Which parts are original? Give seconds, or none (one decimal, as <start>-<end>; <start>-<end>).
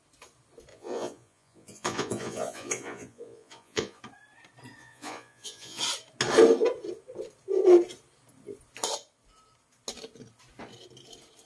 0.0-0.7; 4.0-4.8; 5.8-11.5